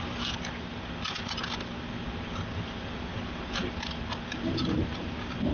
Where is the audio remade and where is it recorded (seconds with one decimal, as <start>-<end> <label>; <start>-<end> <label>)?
0.0-5.5 recorded